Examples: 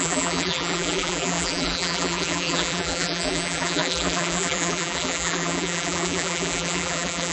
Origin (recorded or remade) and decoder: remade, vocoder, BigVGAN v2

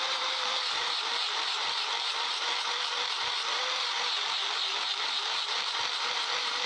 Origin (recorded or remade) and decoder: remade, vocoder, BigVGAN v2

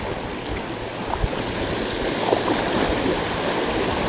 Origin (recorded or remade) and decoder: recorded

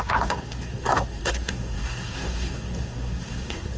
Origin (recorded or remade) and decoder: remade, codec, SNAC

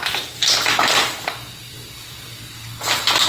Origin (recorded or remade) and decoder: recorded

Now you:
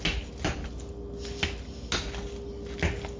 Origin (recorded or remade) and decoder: recorded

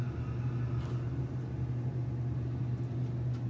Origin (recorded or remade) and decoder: recorded